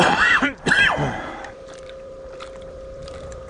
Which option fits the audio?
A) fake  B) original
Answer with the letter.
A